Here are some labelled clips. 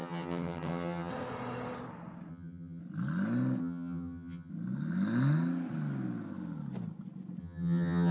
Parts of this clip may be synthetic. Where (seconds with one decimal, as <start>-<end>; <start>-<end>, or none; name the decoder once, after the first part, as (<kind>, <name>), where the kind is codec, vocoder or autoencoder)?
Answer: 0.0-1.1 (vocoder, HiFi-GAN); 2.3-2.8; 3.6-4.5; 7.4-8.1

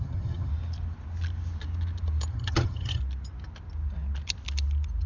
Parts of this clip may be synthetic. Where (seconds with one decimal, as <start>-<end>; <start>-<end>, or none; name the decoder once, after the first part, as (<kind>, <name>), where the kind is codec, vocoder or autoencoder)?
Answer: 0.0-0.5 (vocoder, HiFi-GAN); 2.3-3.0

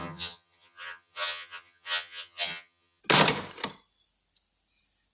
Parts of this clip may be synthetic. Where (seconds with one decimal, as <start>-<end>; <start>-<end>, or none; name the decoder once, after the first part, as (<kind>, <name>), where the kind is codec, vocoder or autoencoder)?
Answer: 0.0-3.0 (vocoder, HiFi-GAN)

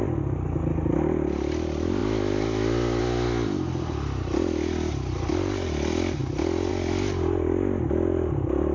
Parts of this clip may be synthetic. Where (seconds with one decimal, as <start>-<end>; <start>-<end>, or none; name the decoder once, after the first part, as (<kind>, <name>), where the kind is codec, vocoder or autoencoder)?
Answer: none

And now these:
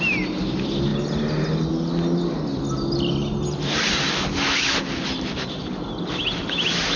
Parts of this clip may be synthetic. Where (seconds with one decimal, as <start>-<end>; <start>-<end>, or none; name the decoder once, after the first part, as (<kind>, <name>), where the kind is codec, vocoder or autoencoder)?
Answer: none

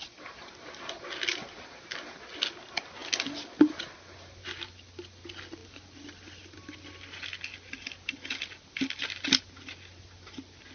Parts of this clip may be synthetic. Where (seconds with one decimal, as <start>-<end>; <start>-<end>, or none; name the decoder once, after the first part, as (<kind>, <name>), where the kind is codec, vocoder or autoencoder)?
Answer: none